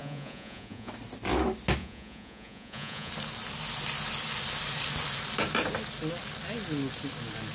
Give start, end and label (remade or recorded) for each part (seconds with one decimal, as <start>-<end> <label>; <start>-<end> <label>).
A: 0.0-0.9 remade; 0.9-1.8 recorded; 1.8-3.1 remade; 3.1-7.5 recorded